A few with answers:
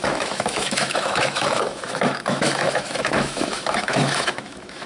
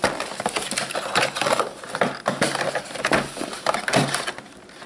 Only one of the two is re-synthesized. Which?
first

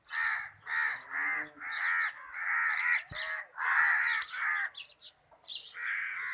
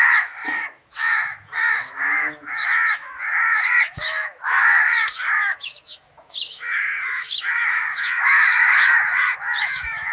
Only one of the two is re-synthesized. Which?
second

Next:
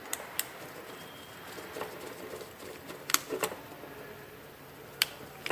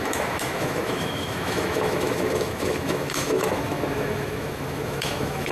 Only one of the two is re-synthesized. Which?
second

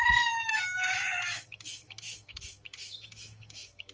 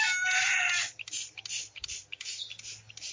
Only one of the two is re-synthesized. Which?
first